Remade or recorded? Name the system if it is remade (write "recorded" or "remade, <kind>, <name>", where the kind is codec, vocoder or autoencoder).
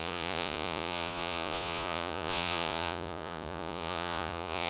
remade, vocoder, Vocos